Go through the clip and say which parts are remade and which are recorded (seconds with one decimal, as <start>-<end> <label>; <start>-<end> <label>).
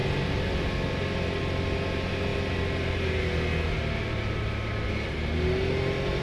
0.0-6.2 recorded